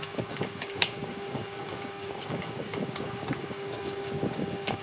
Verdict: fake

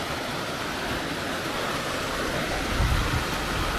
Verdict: real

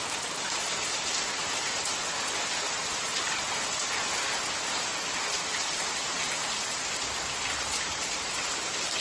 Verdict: real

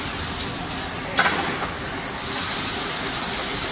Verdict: real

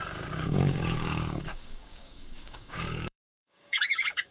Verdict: fake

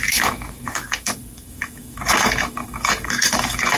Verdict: fake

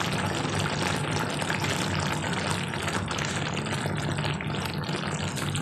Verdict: real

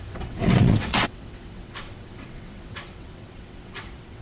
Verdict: fake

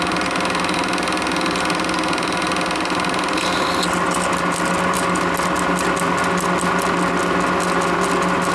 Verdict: real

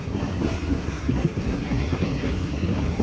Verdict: fake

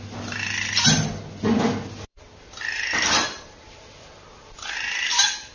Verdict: real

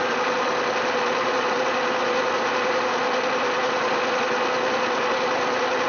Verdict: real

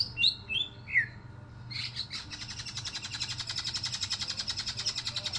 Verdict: real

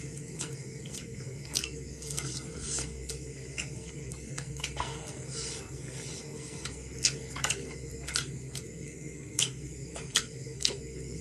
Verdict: fake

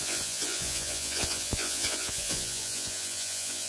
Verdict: fake